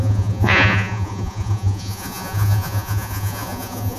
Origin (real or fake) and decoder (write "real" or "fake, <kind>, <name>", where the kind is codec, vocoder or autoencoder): fake, vocoder, Vocos